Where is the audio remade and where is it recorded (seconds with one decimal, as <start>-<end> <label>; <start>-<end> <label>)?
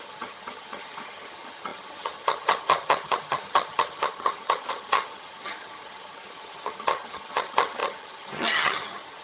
0.0-9.2 remade